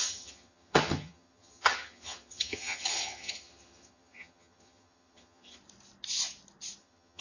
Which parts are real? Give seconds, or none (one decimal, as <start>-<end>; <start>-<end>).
5.6-6.8